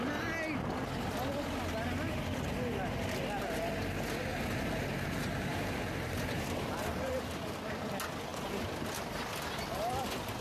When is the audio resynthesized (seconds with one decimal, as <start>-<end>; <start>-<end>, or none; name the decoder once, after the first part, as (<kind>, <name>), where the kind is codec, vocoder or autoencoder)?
4.3-7.9 (vocoder, BigVGAN v2)